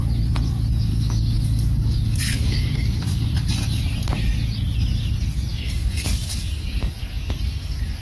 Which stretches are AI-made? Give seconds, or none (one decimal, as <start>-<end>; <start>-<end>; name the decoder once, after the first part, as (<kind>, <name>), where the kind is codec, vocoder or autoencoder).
0.9-3.3 (codec, DAC); 5.5-8.0